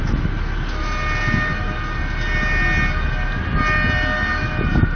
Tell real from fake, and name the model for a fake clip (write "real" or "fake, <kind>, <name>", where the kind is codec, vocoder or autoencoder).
real